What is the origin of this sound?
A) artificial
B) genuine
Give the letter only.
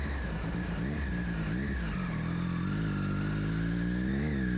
B